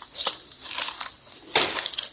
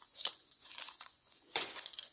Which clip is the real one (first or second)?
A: first